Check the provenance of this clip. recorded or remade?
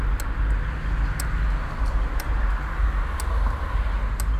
recorded